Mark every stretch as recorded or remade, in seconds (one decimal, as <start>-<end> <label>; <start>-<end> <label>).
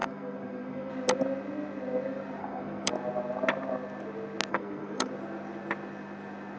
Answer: 0.0-0.9 remade; 0.9-2.4 recorded; 2.4-2.9 remade; 2.9-4.5 recorded; 4.5-5.1 remade; 5.1-6.6 recorded